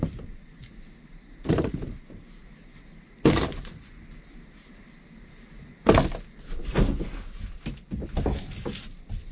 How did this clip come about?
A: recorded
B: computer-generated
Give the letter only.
A